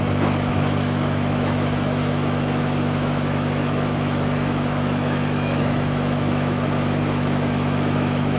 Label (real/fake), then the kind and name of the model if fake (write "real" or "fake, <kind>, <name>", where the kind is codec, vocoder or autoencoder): fake, autoencoder, DAC-VAE